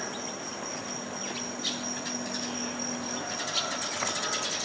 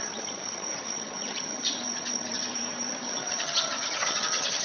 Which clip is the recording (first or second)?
first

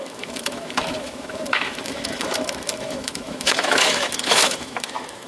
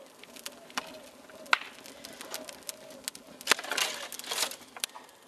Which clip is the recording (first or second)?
second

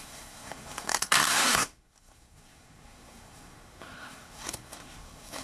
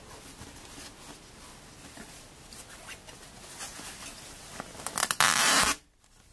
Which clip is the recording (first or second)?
second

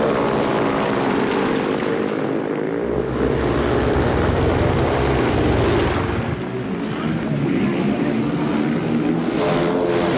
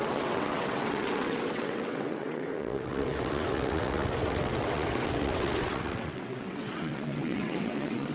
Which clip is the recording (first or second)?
first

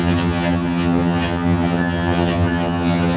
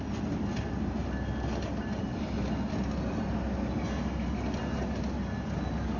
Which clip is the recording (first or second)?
second